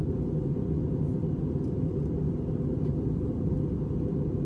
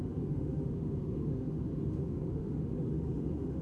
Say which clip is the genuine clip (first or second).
first